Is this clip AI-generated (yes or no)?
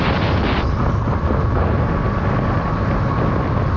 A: no